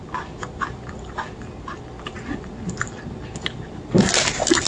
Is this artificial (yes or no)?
no